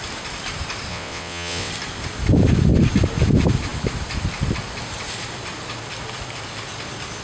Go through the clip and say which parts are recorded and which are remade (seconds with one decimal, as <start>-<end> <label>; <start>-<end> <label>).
0.0-0.9 recorded; 0.9-1.7 remade; 1.7-7.2 recorded